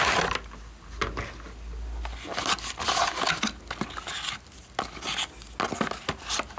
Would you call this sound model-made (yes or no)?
no